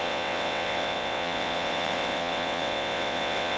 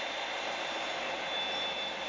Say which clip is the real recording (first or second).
second